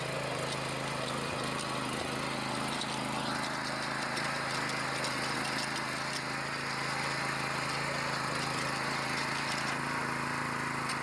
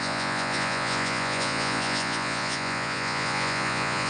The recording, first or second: first